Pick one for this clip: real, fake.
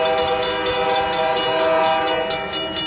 real